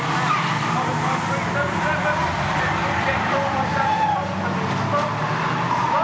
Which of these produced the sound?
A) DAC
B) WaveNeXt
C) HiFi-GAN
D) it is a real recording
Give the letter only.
D